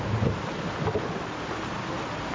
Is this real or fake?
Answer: real